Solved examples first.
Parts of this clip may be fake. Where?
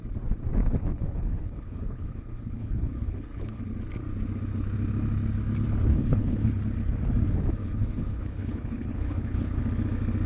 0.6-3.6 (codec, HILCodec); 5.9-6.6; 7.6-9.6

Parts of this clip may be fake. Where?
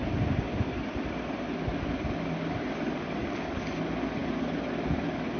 none